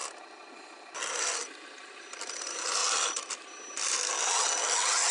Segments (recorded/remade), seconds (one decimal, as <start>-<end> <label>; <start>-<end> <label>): 0.0-5.1 recorded

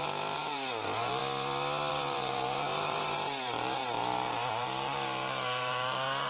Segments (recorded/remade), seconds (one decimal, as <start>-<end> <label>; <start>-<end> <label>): 0.0-1.2 remade; 1.2-1.9 recorded; 1.9-6.3 remade

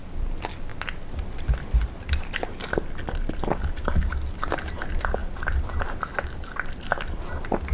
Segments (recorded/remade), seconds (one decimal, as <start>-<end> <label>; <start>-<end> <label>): 0.0-5.2 recorded; 5.2-5.9 remade; 5.9-7.7 recorded

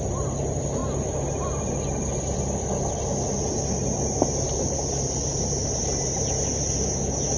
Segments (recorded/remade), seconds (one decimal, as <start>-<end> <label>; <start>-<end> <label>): 0.0-0.8 remade; 0.8-3.6 recorded; 3.6-7.4 remade

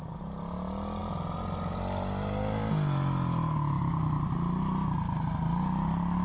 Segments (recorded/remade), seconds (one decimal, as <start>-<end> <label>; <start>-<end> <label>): 0.0-6.2 recorded

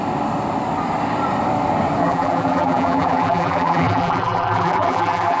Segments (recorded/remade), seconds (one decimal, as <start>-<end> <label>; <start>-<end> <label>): 0.0-2.0 recorded; 2.0-5.4 remade